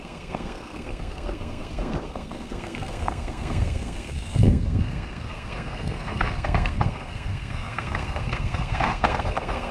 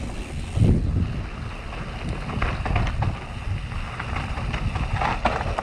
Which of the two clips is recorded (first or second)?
second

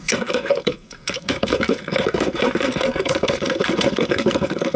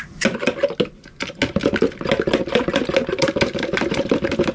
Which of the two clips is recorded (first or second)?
second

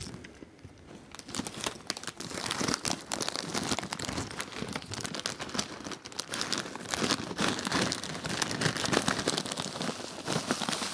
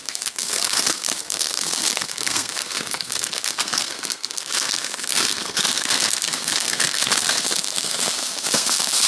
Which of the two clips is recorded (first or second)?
first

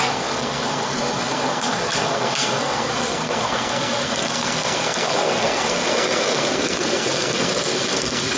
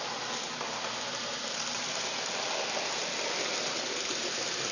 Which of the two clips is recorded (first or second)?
second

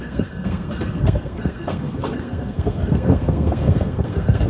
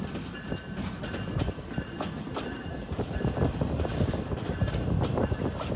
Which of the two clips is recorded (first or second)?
second